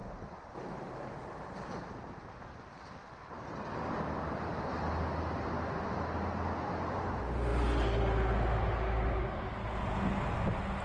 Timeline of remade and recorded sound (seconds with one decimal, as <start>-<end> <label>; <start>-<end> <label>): 0.0-2.9 remade; 2.9-10.8 recorded